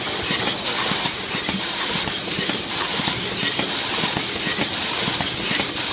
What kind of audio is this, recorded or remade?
recorded